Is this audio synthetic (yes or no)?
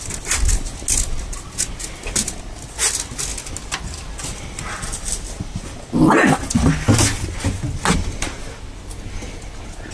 no